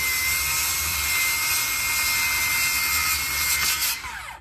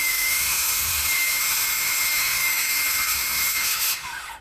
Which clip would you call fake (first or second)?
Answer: second